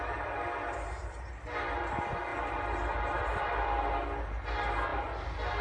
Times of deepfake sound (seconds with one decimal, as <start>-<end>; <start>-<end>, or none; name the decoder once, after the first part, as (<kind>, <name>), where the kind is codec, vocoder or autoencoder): none